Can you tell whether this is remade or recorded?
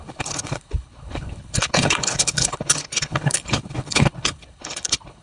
remade